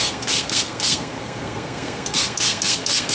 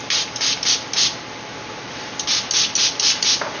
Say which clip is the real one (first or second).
second